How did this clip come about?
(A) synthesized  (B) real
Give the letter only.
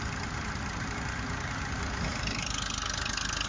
B